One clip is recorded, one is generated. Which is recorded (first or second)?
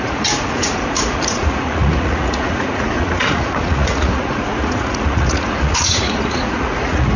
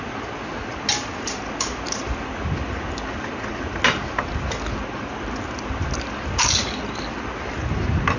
second